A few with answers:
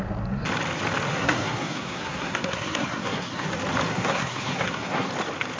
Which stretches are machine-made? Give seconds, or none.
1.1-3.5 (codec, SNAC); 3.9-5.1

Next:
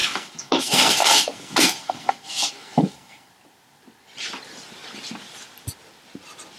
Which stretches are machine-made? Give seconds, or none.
0.0-3.3 (codec, SNAC)

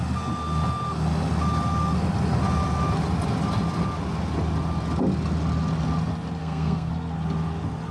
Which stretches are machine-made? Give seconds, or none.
6.4-6.9 (codec, SNAC)

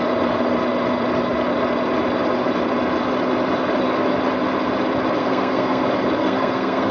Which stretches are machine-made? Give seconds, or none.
5.2-5.8 (codec, SNAC); 6.2-6.9